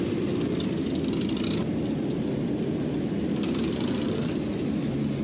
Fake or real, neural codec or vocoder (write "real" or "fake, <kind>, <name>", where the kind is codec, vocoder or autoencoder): real